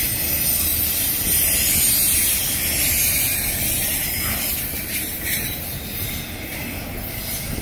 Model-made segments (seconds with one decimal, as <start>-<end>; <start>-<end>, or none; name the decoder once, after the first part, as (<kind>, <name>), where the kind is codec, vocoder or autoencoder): 3.9-6.0 (vocoder, BigVGAN v2)